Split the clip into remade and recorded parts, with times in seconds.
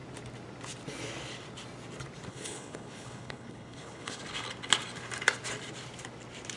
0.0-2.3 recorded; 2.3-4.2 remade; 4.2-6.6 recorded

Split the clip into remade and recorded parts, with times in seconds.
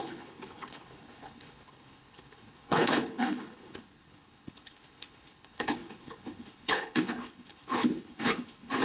0.0-8.8 remade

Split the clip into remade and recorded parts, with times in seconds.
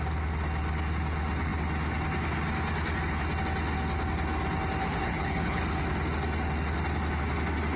0.0-4.8 recorded; 4.8-5.6 remade; 5.6-7.8 recorded